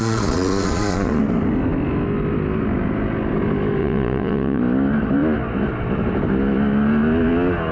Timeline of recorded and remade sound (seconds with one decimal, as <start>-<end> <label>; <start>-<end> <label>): 0.0-1.2 remade; 1.2-3.8 recorded; 3.8-4.6 remade; 4.6-7.7 recorded